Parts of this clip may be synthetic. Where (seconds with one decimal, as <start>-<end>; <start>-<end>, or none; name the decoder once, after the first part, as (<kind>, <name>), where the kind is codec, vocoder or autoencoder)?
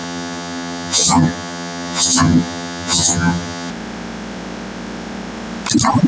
0.0-3.7 (vocoder, HiFi-GAN)